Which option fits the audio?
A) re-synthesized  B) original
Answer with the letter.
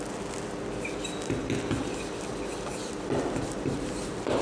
B